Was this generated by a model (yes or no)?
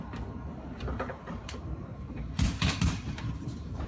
yes